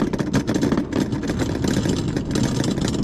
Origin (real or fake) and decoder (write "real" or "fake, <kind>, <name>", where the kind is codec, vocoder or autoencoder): real